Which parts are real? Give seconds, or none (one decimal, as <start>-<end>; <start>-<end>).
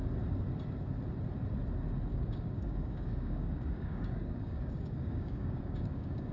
0.0-2.1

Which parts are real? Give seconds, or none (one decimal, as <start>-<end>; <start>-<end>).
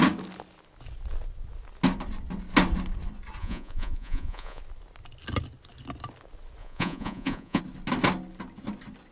0.0-3.4; 4.6-6.6; 7.6-9.1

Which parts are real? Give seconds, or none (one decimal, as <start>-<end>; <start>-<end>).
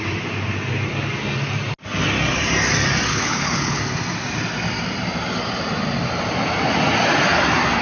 0.0-3.1; 3.8-7.8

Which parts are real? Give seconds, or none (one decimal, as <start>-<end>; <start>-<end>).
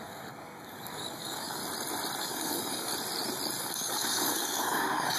1.6-2.2; 2.9-3.6